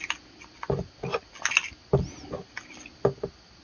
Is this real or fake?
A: real